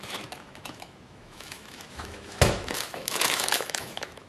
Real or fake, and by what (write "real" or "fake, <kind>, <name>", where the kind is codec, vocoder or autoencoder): fake, autoencoder, DAC-VAE